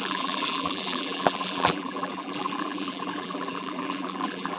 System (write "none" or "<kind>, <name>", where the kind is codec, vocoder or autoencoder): vocoder, BigVGAN v2